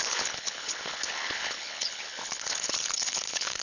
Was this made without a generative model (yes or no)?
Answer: no